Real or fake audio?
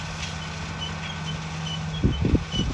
real